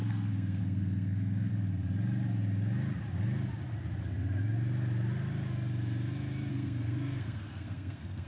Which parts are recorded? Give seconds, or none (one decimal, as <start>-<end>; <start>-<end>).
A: 1.5-6.5